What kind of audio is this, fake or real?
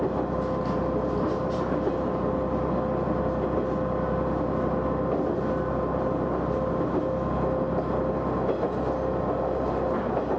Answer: real